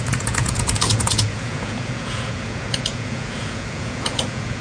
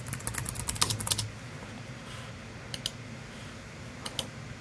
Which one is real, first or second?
second